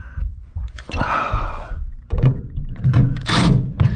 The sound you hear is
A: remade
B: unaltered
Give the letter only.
A